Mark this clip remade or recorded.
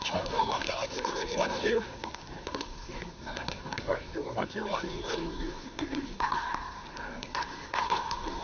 remade